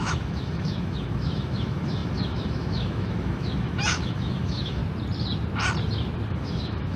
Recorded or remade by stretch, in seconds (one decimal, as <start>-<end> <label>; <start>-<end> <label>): 0.0-4.8 remade; 4.8-6.3 recorded; 6.3-7.0 remade